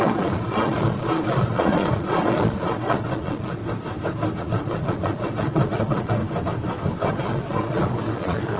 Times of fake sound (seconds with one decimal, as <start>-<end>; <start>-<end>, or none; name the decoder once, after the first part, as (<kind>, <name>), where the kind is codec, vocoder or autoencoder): 0.0-3.6 (vocoder, Vocos); 4.4-6.2; 7.1-8.6